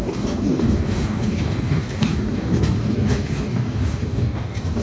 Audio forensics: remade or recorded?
remade